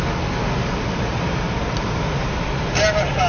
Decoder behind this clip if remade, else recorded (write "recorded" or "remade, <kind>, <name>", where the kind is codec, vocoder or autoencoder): recorded